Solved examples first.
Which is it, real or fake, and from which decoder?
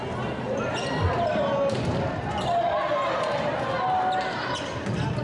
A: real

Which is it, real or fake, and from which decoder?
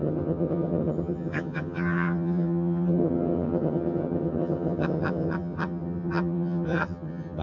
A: fake, vocoder, HiFi-GAN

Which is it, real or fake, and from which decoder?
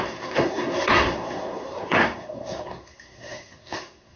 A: fake, codec, SNAC